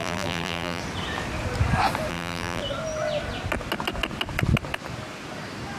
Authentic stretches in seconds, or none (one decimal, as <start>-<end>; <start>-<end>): 0.8-2.1; 2.6-5.8